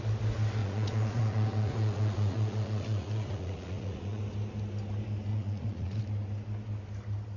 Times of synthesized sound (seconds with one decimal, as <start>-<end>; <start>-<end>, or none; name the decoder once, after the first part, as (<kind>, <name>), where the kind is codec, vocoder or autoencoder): 0.6-4.2 (vocoder, Vocos); 5.3-6.0